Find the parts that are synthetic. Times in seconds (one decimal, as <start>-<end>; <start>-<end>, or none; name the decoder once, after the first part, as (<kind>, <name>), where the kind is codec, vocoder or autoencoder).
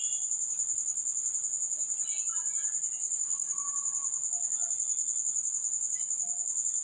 3.0-3.7 (codec, DAC)